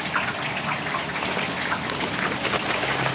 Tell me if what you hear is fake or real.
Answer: real